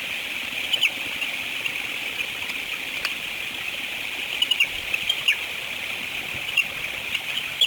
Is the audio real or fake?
real